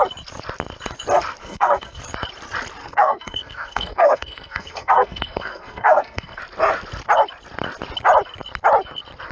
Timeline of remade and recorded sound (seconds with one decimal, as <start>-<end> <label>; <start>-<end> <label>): 0.0-1.4 recorded; 1.4-2.0 remade; 2.0-2.8 recorded; 2.8-6.4 remade; 6.4-9.3 recorded